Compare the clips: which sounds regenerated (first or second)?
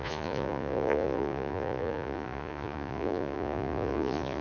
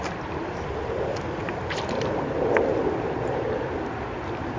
first